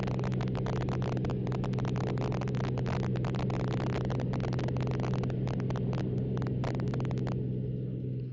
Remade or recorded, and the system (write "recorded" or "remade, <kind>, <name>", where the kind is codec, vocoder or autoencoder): recorded